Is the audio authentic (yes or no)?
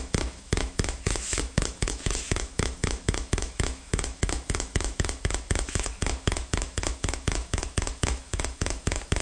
no